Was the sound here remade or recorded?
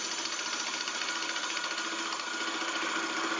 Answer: recorded